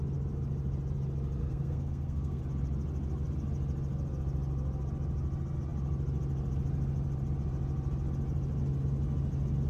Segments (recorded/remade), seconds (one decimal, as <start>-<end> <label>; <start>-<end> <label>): 0.0-1.4 recorded; 1.4-2.4 remade; 2.4-9.7 recorded